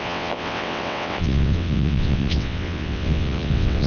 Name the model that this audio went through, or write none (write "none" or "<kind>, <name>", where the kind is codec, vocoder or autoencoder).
vocoder, WaveNeXt